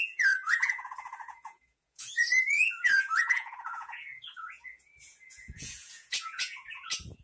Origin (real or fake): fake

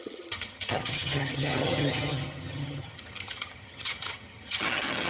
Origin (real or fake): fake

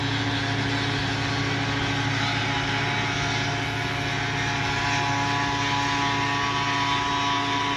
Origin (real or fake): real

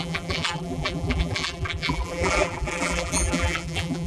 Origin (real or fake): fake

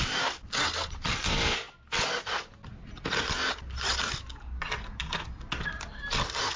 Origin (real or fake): real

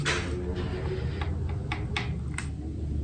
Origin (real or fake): real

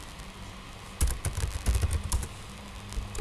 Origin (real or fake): real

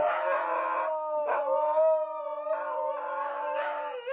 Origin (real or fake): real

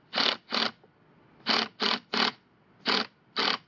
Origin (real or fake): real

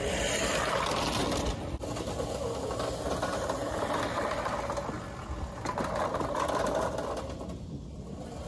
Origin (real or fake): real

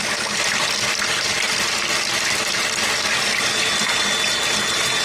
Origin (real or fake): real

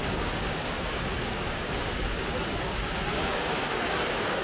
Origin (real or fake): fake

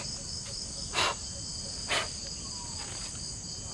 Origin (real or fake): real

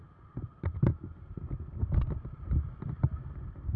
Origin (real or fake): real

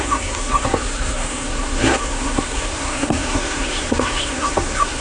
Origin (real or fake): fake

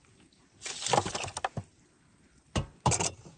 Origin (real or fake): real